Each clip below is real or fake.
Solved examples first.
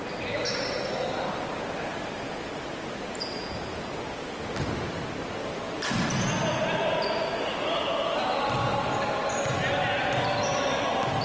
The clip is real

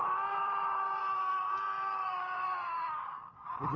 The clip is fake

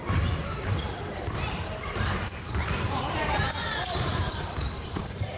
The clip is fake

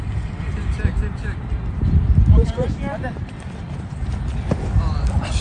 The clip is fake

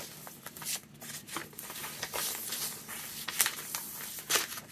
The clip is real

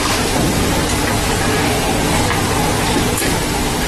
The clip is real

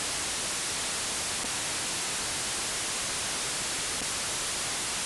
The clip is real